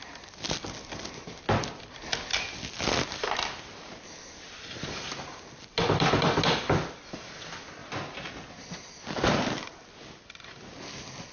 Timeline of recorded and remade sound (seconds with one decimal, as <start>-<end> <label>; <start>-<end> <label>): 0.0-11.3 recorded